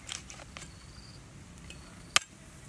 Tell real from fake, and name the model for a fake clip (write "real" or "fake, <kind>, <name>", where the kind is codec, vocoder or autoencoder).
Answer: real